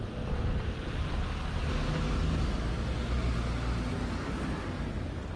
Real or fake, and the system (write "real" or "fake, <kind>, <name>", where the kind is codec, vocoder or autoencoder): real